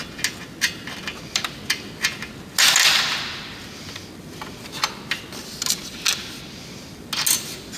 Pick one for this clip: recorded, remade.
recorded